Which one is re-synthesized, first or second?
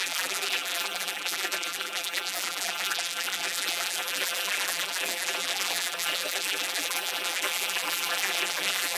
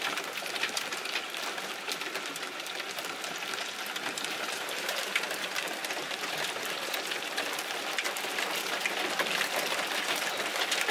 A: first